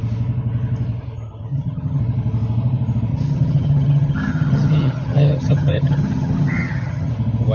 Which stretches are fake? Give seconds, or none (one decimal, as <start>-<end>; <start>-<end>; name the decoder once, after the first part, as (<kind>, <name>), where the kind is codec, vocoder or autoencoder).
1.5-2.0 (vocoder, HiFi-GAN); 3.1-7.1